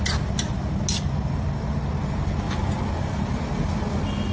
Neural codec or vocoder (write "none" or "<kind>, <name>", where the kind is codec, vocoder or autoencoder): none